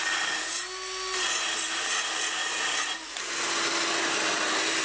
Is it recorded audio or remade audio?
recorded